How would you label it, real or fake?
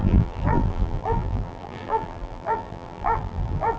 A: fake